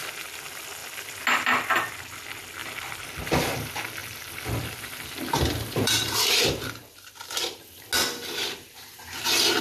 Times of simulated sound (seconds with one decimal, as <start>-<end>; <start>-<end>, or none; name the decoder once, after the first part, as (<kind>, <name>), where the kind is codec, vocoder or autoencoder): 2.6-3.2 (vocoder, BigVGAN v2); 4.0-7.8